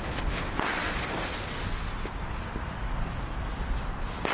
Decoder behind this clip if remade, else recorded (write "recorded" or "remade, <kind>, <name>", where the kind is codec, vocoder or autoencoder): recorded